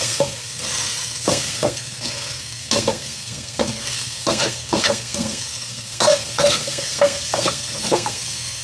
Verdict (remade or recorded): remade